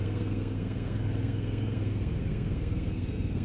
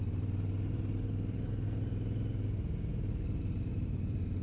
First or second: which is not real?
first